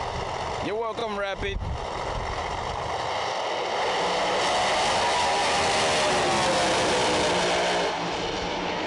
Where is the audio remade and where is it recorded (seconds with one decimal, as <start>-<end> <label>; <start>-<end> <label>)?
0.0-8.9 recorded